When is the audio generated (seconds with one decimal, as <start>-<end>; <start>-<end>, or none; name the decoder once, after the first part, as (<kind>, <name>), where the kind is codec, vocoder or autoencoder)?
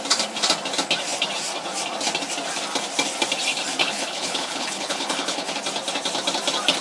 3.8-5.5 (codec, HILCodec)